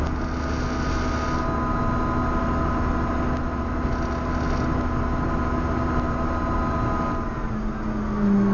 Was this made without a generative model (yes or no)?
yes